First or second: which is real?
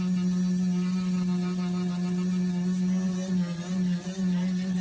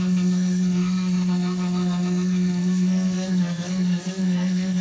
first